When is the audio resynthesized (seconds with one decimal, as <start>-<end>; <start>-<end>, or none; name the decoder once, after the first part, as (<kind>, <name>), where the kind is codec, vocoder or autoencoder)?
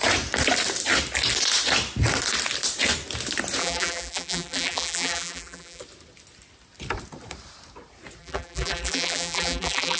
3.6-5.8 (vocoder, BigVGAN v2); 8.2-10.0